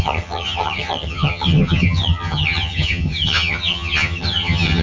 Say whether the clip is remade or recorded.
remade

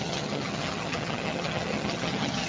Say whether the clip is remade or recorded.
remade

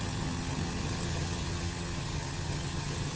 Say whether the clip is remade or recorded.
remade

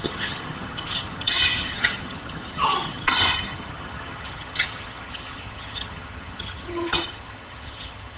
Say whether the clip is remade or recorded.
remade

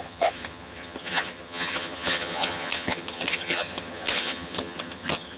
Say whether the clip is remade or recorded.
remade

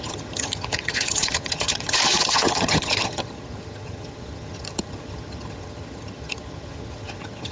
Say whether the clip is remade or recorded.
remade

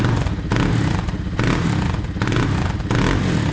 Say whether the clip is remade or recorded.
recorded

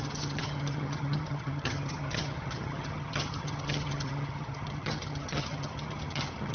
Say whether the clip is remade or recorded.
remade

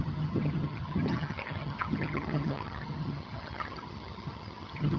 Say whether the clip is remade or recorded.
remade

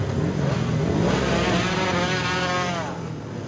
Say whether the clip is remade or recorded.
recorded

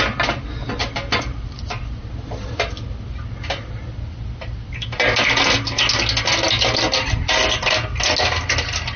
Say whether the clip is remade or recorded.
recorded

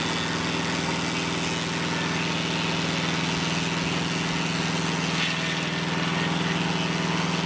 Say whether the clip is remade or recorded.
recorded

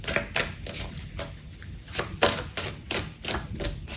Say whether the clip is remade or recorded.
recorded